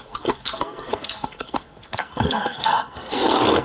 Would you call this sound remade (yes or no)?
yes